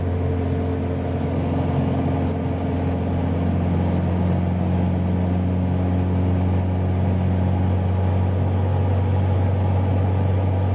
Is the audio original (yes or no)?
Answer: yes